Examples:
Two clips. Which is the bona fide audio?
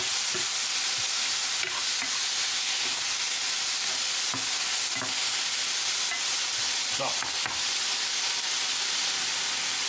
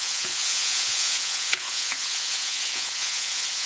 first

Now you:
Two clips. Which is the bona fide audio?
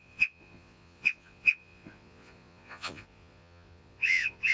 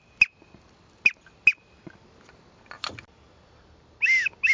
second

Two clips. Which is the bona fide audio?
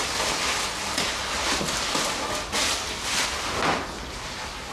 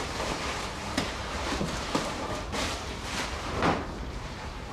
first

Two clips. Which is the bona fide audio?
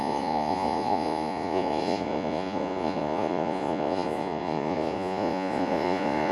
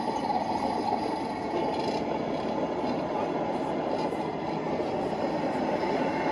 second